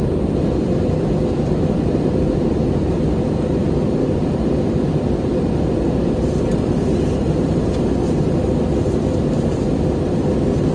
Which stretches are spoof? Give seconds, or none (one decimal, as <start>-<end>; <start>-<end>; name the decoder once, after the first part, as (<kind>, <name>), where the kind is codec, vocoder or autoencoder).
none